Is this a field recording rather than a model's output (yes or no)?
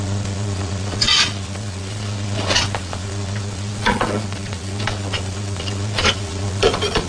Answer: no